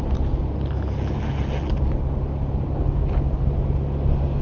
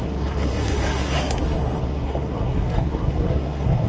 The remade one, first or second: second